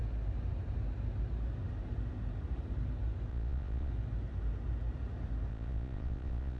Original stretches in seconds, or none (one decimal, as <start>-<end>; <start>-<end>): 0.0-3.3; 3.9-5.5

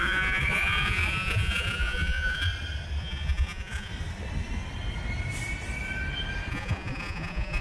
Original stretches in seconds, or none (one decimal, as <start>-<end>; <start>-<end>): 2.5-3.0; 3.9-6.5

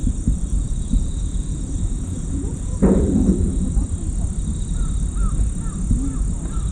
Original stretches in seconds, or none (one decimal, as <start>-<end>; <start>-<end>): 3.7-6.7

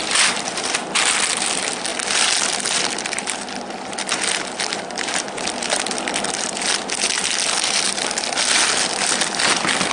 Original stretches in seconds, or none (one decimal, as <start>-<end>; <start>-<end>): 0.0-9.9

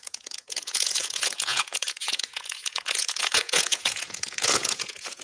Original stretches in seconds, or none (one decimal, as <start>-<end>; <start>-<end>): none